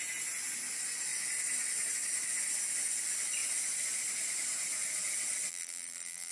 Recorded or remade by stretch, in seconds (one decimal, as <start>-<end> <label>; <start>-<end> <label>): 0.0-5.5 recorded; 5.5-6.3 remade